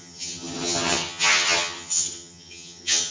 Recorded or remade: remade